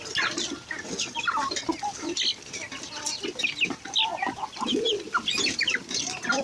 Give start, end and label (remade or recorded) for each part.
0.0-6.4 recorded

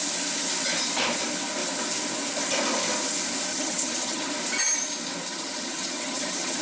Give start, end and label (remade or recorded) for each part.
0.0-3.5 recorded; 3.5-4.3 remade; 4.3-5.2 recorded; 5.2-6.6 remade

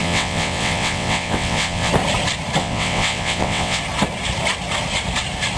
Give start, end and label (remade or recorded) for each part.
0.0-1.9 remade; 1.9-2.6 recorded; 2.6-3.8 remade; 3.8-5.6 recorded